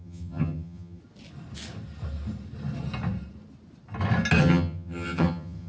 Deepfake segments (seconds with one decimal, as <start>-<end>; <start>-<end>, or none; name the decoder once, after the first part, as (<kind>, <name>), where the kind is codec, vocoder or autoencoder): 0.0-1.0 (vocoder, HiFi-GAN); 4.4-5.7